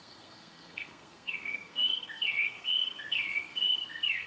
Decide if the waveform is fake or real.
fake